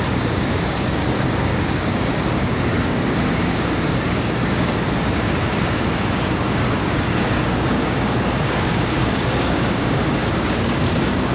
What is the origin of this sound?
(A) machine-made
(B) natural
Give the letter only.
A